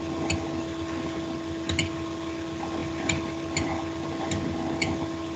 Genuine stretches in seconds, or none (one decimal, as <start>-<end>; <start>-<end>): 0.0-2.8